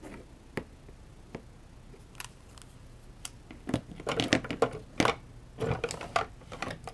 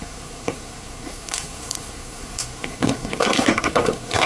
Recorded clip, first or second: first